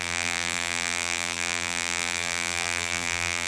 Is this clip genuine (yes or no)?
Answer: no